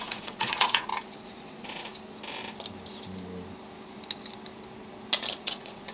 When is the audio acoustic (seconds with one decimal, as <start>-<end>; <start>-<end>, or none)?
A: 0.9-1.5; 1.9-5.4